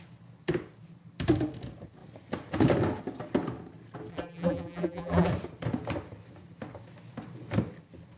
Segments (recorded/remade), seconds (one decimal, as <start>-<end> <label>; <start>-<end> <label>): 0.0-4.1 recorded; 4.1-5.3 remade; 5.3-8.2 recorded